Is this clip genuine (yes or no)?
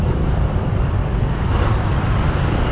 no